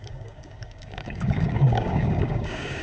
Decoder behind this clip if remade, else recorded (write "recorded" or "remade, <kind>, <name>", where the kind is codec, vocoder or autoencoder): remade, codec, DAC